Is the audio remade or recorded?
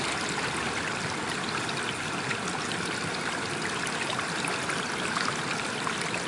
recorded